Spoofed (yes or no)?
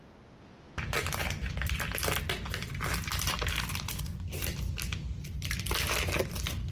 no